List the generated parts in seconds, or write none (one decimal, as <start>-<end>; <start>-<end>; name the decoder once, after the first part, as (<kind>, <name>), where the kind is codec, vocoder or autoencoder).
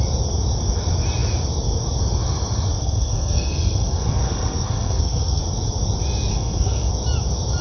2.8-5.4 (codec, SNAC); 6.3-6.9